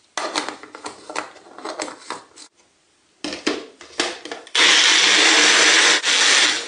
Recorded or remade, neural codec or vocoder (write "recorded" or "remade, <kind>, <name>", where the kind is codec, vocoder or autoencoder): recorded